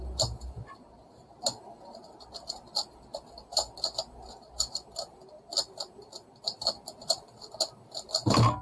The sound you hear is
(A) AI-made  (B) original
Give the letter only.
B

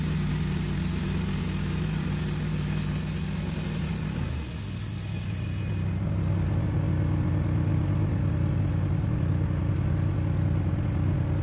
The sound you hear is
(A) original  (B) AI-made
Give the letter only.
A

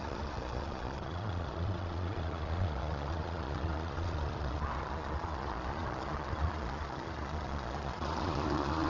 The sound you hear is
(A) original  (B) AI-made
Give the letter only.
B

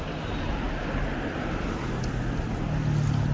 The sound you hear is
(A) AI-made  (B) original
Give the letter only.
B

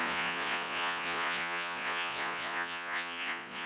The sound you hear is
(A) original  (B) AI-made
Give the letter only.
B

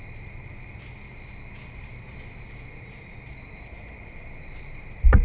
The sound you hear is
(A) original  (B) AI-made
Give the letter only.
A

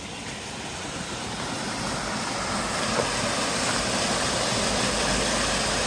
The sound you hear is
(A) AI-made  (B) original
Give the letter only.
B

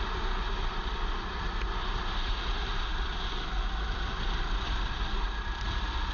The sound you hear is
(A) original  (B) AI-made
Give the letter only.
A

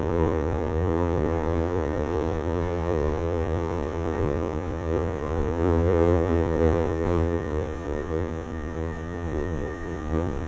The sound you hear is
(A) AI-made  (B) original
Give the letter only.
A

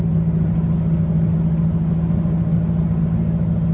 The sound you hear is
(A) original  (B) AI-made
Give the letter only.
A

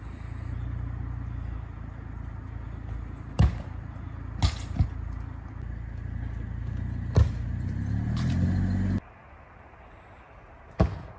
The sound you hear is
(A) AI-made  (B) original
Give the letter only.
B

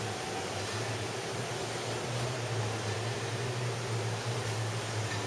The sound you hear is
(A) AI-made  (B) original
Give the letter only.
B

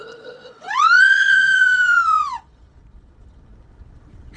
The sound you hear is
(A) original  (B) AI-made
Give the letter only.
B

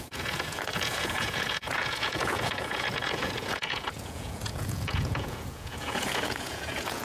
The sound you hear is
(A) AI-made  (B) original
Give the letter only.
A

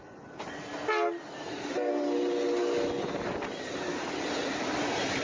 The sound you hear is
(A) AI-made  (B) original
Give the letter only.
B